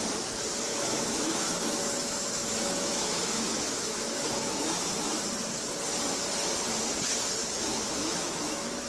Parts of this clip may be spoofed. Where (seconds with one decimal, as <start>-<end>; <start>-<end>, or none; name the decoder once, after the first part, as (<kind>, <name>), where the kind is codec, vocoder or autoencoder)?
0.7-5.2 (autoencoder, DAC-VAE); 7.4-8.9